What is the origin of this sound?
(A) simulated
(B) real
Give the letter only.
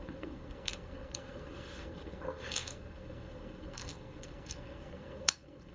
A